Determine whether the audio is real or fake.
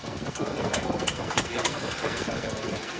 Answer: fake